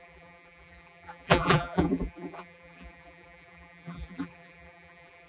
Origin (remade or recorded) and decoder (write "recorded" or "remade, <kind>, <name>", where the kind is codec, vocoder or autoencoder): remade, vocoder, BigVGAN v2